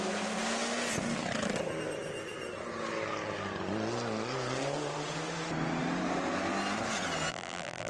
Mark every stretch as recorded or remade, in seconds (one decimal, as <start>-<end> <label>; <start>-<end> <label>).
0.0-7.3 recorded; 7.3-7.9 remade